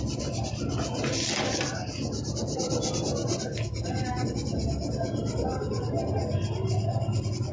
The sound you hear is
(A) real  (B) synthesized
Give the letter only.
A